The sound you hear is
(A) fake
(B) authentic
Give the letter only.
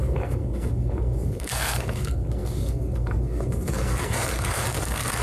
A